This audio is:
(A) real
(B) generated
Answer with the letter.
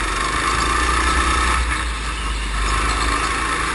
A